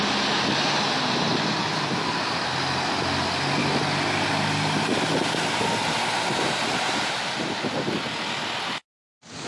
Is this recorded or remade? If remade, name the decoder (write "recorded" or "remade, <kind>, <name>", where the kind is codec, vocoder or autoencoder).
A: recorded